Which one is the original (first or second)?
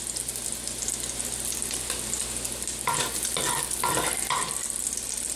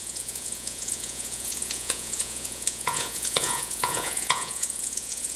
first